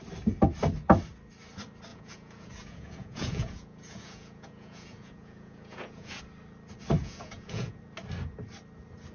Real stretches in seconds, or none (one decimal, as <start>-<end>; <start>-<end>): 0.0-1.9; 6.2-7.0; 7.8-9.1